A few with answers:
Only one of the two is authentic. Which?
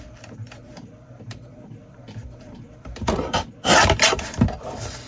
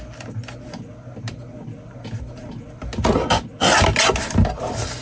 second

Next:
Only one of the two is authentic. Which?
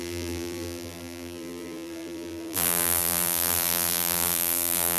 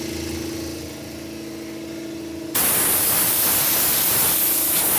second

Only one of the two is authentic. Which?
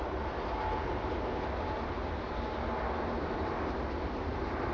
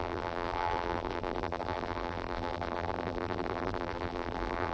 first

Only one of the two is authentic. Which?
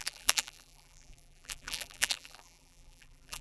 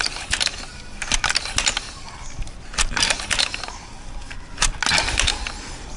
second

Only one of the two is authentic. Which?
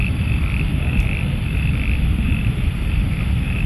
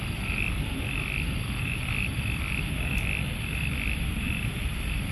second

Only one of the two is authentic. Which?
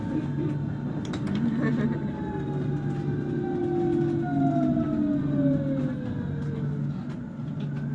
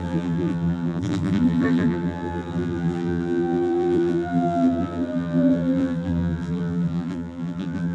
first